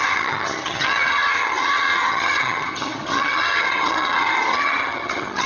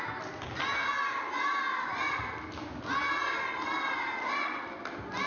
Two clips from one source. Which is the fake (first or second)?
first